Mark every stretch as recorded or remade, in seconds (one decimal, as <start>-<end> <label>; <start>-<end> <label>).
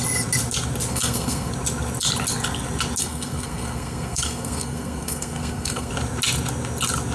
0.0-0.9 recorded; 0.9-1.5 remade; 1.5-3.0 recorded; 3.0-5.9 remade; 5.9-7.1 recorded